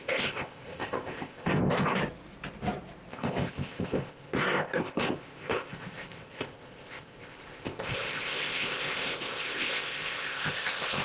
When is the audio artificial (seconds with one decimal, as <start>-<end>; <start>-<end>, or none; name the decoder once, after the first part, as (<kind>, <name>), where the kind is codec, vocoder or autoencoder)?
0.0-2.0 (codec, ZipCodec); 3.1-11.0